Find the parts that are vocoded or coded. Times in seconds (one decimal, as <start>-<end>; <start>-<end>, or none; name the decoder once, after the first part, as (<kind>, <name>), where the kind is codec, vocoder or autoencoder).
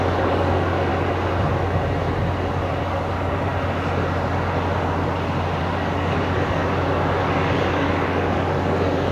0.0-0.9 (codec, DAC); 2.8-3.5; 5.6-6.6; 7.2-9.1